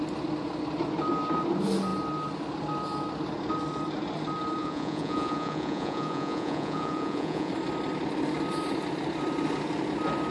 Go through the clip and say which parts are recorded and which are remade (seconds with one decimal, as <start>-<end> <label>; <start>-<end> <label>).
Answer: 0.0-4.6 recorded; 4.6-7.5 remade; 7.5-10.3 recorded